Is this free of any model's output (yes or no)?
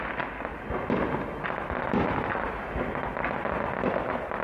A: yes